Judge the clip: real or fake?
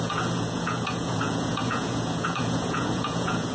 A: fake